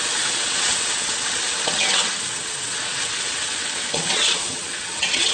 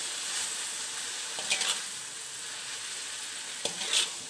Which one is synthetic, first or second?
first